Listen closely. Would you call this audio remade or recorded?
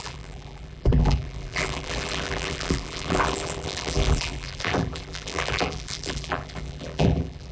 remade